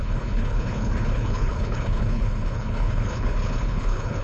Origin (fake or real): fake